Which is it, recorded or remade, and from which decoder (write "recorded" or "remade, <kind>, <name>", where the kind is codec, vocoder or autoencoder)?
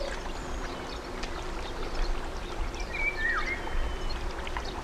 recorded